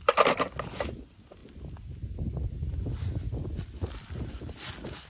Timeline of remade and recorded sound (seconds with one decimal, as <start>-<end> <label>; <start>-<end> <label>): 0.0-5.1 recorded